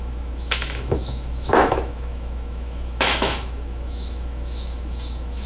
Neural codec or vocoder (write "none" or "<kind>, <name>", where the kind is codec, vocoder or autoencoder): autoencoder, DAC-VAE